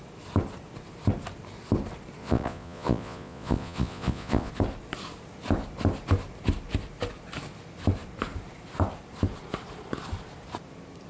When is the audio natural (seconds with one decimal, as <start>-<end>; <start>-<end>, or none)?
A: 0.0-2.2; 4.5-11.1